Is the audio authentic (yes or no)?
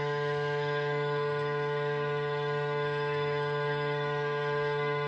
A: no